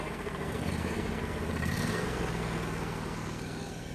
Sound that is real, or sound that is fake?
fake